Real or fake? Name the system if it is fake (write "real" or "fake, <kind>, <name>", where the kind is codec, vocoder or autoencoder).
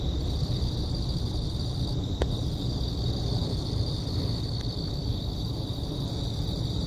real